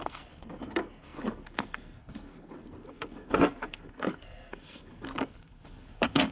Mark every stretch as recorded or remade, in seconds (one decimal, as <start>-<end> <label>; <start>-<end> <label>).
0.0-6.3 remade